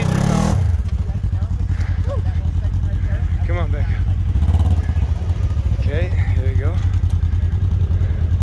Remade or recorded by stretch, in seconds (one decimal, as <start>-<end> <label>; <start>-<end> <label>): 0.0-8.4 recorded